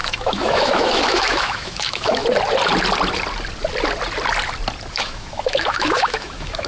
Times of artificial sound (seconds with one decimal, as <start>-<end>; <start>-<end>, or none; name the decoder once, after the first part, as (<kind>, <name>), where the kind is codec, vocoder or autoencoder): 0.0-2.2 (autoencoder, DAC-VAE); 4.9-6.7